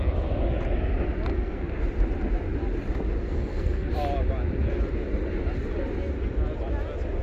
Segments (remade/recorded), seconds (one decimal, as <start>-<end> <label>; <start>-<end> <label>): 0.0-1.3 recorded; 1.3-1.8 remade; 1.8-3.2 recorded; 3.2-3.9 remade; 3.9-7.2 recorded